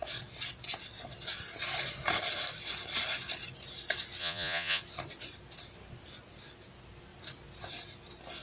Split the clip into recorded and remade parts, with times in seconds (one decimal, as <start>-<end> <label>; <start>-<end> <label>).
0.0-4.2 recorded; 4.2-4.8 remade; 4.8-8.4 recorded